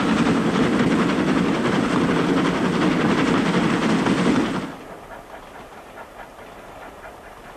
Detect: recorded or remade recorded